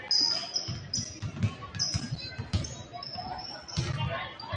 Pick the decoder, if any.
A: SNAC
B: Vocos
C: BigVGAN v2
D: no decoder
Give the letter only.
D